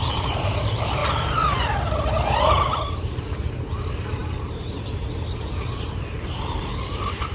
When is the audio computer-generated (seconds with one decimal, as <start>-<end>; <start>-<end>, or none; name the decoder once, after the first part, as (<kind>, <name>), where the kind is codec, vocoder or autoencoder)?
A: 0.0-7.3 (vocoder, BigVGAN v2)